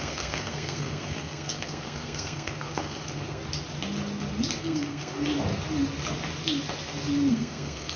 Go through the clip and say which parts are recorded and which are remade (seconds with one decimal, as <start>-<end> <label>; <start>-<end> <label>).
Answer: 0.0-3.4 remade; 3.4-4.6 recorded; 4.6-5.3 remade; 5.3-7.3 recorded; 7.3-8.0 remade